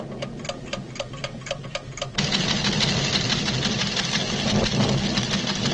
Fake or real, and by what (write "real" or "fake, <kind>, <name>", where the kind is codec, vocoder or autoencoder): real